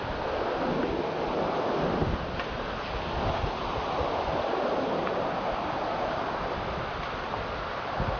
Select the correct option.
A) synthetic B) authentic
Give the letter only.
B